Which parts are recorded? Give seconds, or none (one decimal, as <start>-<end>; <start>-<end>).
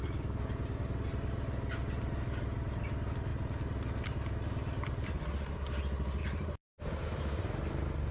0.0-6.2